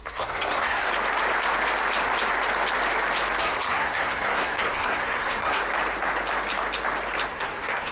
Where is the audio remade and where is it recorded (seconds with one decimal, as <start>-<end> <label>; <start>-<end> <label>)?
0.0-0.9 remade; 0.9-3.4 recorded; 3.4-5.6 remade; 5.6-7.3 recorded; 7.3-7.9 remade